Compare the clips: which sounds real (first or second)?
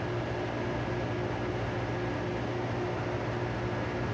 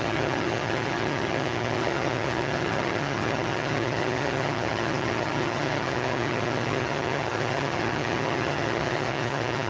first